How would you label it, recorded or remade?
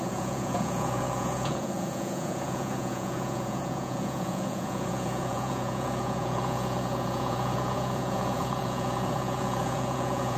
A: remade